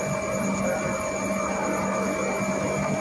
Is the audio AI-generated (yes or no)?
no